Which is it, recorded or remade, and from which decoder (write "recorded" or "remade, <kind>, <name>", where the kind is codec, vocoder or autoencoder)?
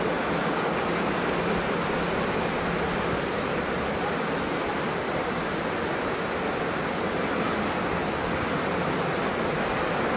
recorded